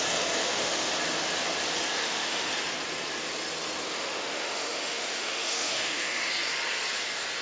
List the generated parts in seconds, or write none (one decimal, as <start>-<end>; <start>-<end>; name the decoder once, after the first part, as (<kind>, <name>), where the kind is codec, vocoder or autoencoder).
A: 0.4-0.9 (autoencoder, DAC-VAE); 2.0-2.5; 3.9-6.3